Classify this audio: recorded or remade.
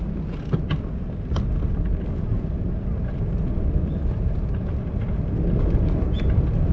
recorded